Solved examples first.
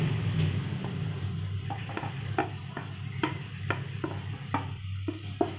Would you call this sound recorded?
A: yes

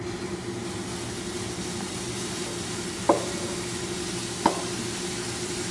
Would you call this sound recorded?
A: yes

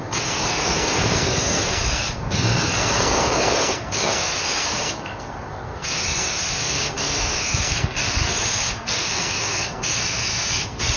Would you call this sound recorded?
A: no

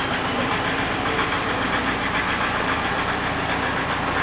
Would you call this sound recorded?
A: no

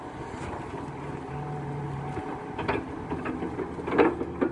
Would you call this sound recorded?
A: yes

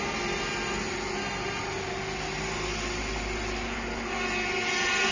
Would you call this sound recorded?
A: yes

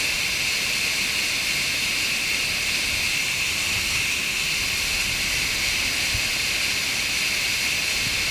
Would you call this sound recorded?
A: yes